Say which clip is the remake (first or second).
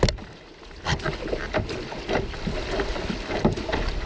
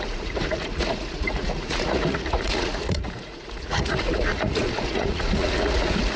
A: second